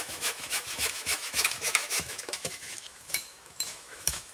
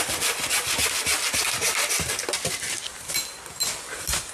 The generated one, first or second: first